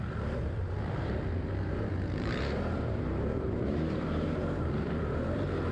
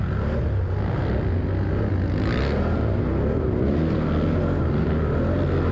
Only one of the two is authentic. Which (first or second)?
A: second